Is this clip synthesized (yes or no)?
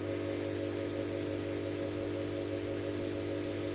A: no